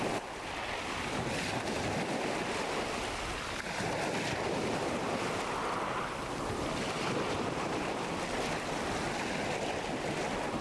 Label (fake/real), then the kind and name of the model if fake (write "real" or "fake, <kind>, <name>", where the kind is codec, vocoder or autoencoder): real